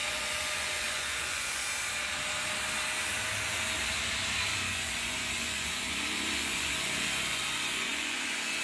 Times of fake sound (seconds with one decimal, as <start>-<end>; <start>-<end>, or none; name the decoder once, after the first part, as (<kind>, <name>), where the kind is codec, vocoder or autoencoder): 0.0-1.6 (vocoder, Vocos); 4.5-8.6